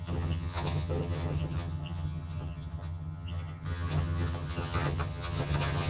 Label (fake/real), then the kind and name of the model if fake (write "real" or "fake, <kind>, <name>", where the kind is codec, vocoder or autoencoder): fake, vocoder, HiFi-GAN